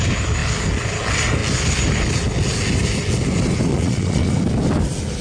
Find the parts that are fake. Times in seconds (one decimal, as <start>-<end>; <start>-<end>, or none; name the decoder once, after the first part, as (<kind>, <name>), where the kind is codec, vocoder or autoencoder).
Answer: 3.7-4.3 (vocoder, Vocos)